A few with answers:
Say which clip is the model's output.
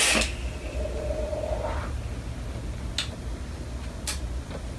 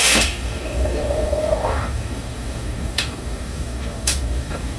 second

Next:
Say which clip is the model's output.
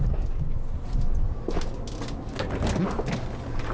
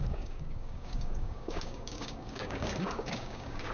second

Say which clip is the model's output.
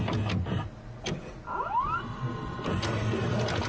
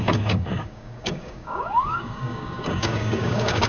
second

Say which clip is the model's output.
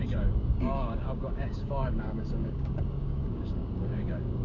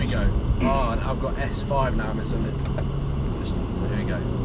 first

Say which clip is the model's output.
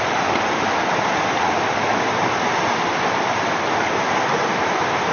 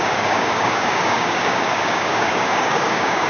second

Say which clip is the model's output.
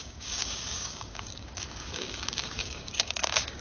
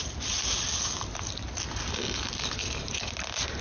first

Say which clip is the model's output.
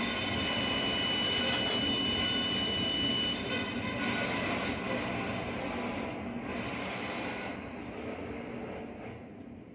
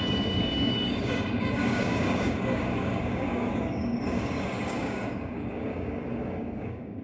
second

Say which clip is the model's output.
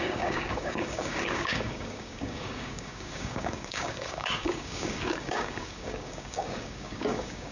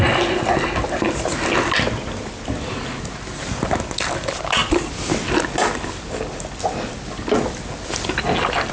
first